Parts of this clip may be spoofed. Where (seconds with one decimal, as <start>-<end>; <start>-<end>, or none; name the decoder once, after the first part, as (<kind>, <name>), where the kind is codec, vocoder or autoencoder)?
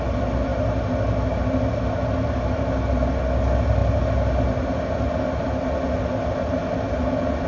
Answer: none